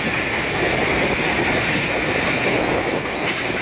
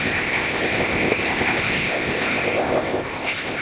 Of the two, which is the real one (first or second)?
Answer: first